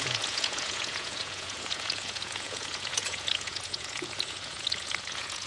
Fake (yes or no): yes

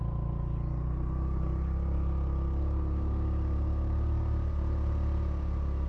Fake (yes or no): no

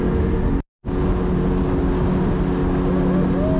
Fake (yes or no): no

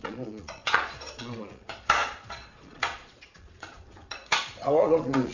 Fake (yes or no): yes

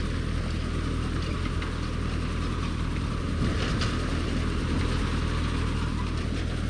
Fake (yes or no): no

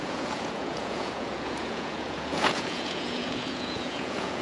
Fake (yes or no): yes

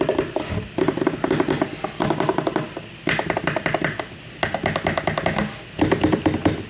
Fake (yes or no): no